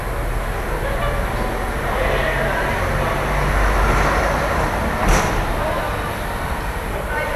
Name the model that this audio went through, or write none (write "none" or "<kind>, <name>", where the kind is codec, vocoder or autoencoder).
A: none